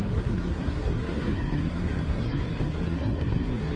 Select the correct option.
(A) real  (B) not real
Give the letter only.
B